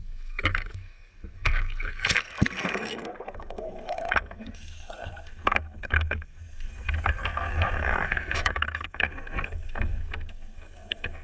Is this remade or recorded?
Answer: remade